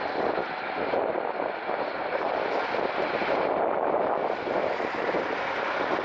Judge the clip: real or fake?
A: real